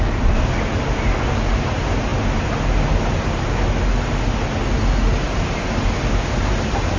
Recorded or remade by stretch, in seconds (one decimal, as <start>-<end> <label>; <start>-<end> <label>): 0.0-7.0 recorded